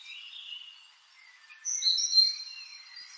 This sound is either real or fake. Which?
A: real